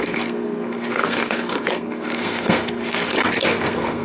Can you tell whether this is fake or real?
fake